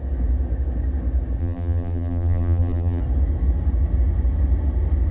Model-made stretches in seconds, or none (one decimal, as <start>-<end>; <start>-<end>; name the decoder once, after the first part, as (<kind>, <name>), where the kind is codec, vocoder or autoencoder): 1.4-3.0 (vocoder, BigVGAN v2)